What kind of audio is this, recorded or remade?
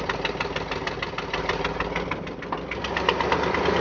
recorded